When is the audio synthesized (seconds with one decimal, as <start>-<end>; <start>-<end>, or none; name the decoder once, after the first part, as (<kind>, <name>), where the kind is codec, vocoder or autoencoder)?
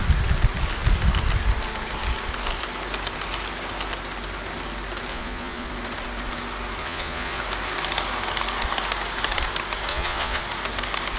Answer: 5.1-5.7 (vocoder, Vocos); 6.8-7.4; 9.9-10.4